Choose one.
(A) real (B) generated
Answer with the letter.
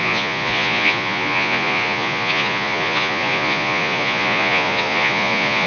B